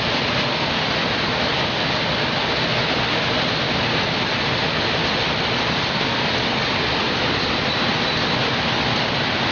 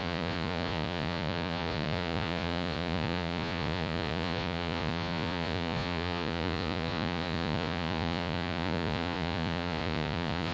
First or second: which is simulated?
second